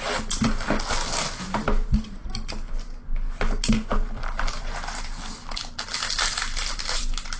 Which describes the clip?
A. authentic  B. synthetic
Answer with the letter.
A